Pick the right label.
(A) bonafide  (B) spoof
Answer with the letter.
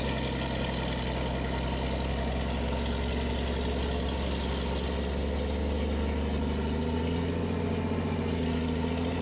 A